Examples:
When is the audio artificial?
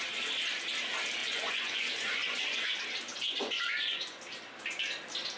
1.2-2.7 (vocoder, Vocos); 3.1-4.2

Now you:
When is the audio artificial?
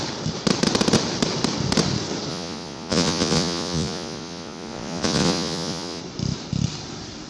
2.3-6.0 (vocoder, Vocos)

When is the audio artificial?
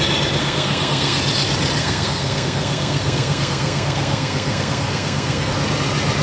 0.4-1.2 (codec, SNAC); 1.8-5.5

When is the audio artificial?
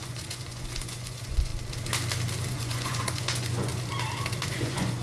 0.0-1.5 (vocoder, Vocos); 2.5-3.7; 4.5-5.0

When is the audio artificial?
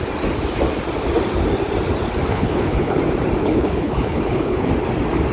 2.3-3.0 (codec, HILCodec); 3.4-4.7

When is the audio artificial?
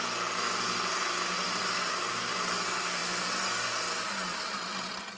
1.6-2.3 (codec, DAC)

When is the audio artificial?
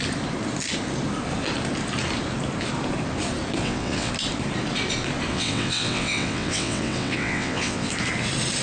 3.6-4.1 (vocoder, WaveNeXt); 5.3-7.9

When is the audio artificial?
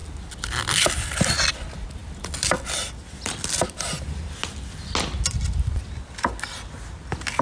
none